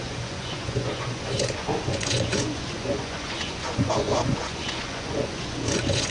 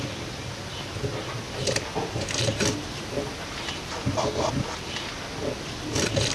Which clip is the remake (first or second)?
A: first